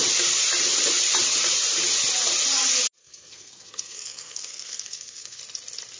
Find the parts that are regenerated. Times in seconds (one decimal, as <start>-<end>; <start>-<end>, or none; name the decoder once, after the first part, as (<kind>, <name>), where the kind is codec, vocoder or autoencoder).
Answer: 3.0-5.4 (codec, SNAC)